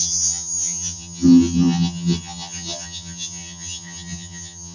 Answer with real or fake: fake